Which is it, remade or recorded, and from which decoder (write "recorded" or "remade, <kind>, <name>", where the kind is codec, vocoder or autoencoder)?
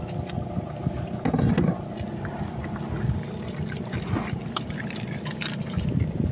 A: recorded